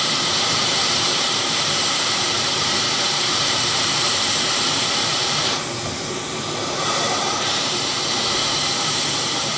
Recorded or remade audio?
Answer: remade